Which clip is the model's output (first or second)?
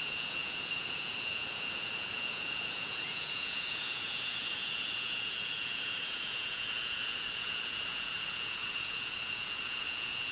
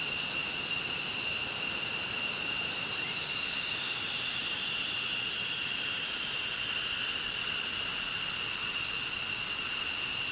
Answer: first